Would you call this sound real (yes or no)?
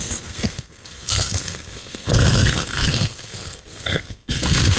no